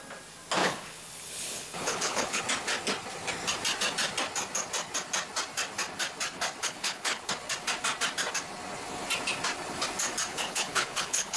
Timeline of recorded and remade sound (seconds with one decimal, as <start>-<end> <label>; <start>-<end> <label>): 0.0-0.6 recorded; 0.6-2.4 remade; 2.4-6.6 recorded; 6.6-7.3 remade; 7.3-10.3 recorded; 10.3-11.4 remade